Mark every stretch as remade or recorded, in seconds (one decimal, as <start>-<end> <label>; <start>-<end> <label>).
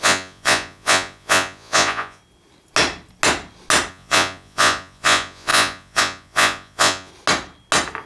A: 0.0-2.2 remade; 2.2-3.9 recorded; 3.9-7.1 remade; 7.1-8.1 recorded